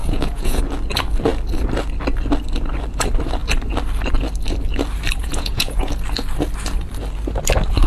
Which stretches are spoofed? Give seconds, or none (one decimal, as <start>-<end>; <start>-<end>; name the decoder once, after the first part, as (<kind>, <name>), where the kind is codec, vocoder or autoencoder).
0.0-0.6 (vocoder, Vocos); 5.2-5.9